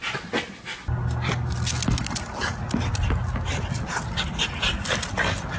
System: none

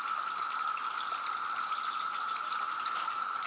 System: none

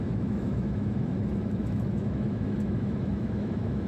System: autoencoder, DAC-VAE